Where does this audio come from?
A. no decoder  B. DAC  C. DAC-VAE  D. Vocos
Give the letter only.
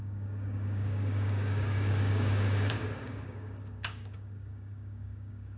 B